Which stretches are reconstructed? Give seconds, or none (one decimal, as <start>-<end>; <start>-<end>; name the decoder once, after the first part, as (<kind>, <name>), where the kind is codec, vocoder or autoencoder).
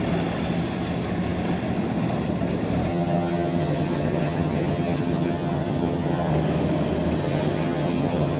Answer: 2.9-6.3 (vocoder, HiFi-GAN); 7.2-8.4